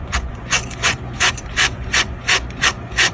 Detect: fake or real fake